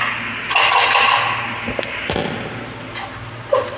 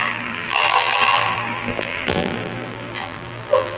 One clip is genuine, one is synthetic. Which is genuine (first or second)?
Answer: first